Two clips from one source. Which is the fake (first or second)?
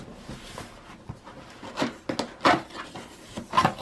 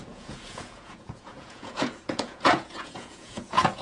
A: second